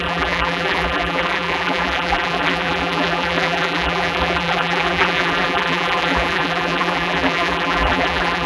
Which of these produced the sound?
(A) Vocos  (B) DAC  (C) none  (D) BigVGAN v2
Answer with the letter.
D